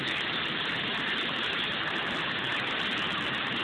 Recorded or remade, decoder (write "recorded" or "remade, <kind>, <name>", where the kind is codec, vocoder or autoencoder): recorded